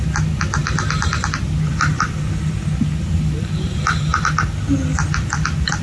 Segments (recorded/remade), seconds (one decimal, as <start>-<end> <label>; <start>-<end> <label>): 0.0-5.8 recorded